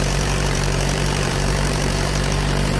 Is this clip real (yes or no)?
no